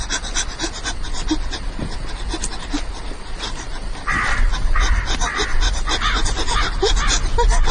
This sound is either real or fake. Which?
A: real